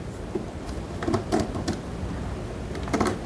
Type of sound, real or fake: real